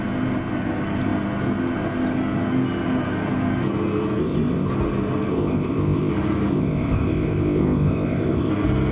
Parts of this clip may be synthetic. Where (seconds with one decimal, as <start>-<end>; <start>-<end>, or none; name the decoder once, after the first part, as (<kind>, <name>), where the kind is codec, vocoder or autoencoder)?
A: 4.2-4.7 (codec, ZipCodec); 5.3-6.1; 6.5-8.5